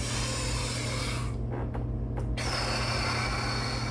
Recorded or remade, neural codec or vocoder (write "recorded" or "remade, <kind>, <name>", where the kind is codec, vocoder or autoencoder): recorded